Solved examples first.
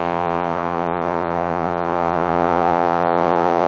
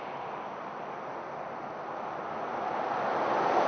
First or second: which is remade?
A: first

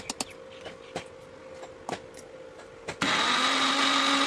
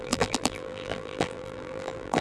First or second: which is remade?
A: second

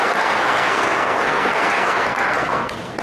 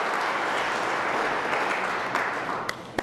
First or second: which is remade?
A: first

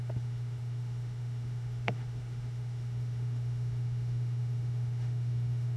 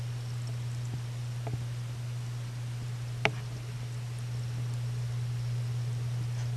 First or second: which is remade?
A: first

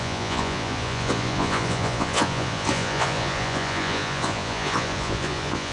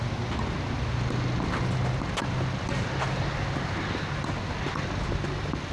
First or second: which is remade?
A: first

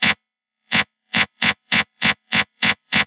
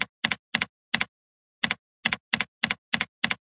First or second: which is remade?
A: first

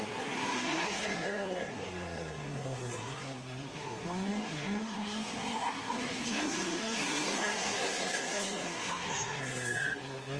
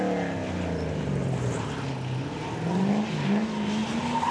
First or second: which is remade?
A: first